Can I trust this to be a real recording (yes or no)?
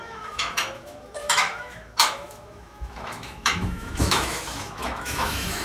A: no